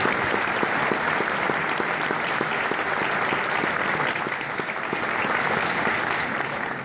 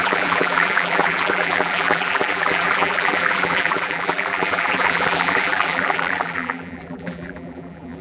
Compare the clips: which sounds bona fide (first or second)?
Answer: first